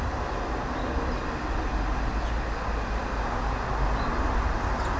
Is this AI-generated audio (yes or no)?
no